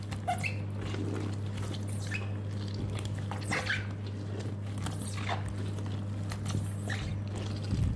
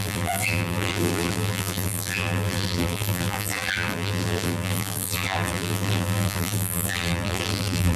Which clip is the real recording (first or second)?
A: first